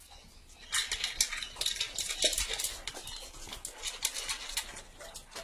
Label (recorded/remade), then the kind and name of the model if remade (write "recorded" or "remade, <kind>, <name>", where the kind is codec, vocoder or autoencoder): recorded